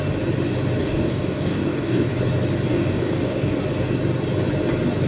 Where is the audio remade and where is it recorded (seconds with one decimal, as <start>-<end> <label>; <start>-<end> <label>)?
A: 0.0-0.8 recorded; 0.8-2.1 remade; 2.1-2.7 recorded; 2.7-3.6 remade; 3.6-5.1 recorded